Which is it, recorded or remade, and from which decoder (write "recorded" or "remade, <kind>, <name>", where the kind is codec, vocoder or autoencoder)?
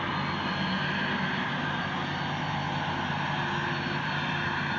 recorded